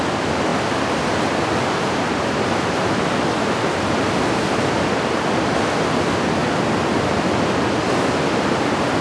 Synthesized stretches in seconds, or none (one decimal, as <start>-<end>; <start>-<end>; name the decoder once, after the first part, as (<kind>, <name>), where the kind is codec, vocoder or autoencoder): none